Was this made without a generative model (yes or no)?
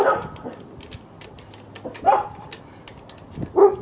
yes